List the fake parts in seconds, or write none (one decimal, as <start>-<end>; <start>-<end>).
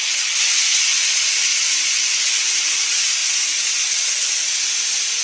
0.0-0.8; 1.5-2.1